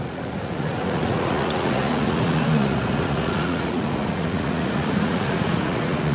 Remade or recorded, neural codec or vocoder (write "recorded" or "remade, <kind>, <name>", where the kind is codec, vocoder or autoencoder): remade, vocoder, Vocos